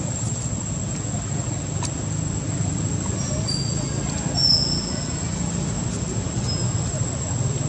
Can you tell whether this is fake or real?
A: real